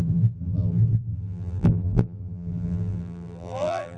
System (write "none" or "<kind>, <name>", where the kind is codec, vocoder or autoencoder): vocoder, BigVGAN v2